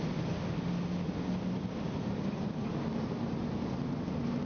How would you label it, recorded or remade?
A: recorded